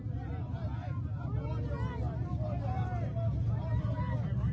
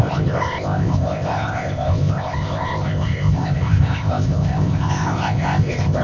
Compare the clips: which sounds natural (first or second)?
first